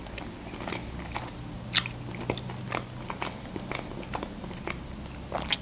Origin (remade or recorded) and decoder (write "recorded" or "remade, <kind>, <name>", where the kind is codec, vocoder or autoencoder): recorded